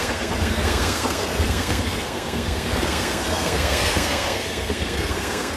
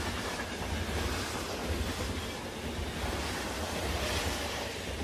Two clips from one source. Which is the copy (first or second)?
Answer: first